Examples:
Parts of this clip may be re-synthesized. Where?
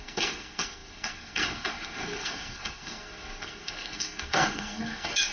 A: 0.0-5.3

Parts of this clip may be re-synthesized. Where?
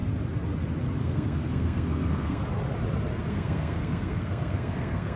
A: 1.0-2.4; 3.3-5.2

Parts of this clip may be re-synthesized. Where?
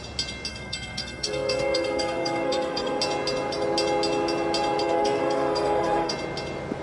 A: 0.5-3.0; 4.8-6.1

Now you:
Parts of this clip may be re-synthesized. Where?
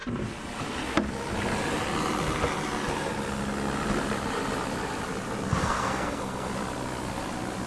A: 5.6-6.5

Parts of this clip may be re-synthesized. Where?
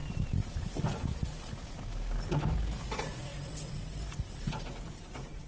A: none